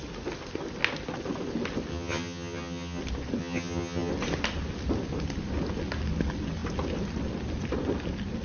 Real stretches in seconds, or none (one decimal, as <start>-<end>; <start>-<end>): 0.0-1.9; 3.0-3.4; 4.1-8.4